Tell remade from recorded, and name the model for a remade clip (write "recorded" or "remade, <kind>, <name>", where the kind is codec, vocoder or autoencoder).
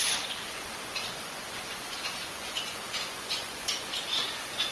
remade, vocoder, Vocos